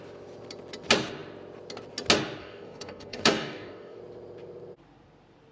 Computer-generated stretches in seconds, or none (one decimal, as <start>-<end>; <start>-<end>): 2.4-4.0